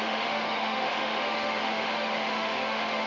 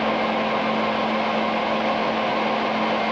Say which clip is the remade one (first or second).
first